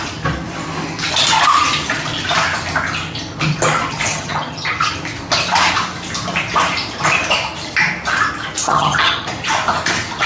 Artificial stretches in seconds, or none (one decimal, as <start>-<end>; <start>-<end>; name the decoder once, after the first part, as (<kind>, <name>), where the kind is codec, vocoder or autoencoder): 4.1-4.9 (vocoder, HiFi-GAN); 8.6-9.3